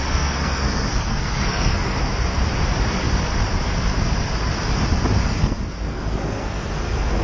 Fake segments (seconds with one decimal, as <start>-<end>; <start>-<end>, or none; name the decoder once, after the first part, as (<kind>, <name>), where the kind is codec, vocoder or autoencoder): 0.0-2.1 (codec, SNAC); 5.2-7.2